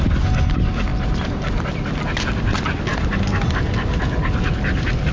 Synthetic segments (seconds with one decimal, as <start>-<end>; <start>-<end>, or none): none

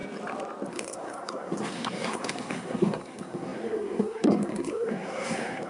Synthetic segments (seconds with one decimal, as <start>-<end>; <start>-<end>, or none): 0.7-5.7

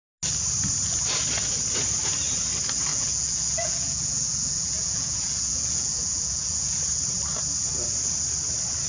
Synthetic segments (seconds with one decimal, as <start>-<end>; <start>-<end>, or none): 2.9-6.8

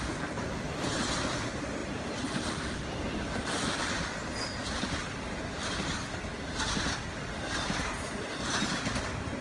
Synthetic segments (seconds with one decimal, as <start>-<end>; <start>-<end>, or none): 1.8-7.1

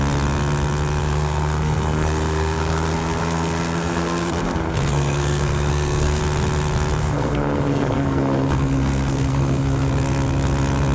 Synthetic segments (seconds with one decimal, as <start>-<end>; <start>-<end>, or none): 1.0-6.2; 7.0-9.9